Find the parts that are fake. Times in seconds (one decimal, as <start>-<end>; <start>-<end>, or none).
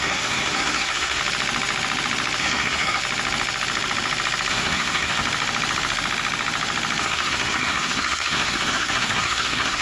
0.0-1.2; 2.4-3.0; 4.5-5.2; 7.0-9.8